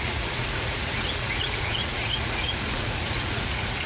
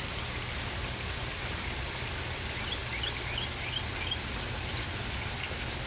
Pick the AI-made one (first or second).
first